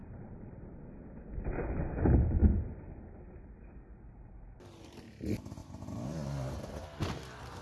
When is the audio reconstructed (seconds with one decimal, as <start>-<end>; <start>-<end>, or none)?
0.0-0.8; 5.6-6.7